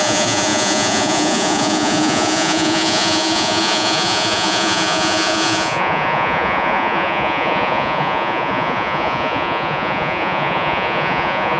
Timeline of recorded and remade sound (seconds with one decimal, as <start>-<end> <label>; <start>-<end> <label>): 0.0-11.6 remade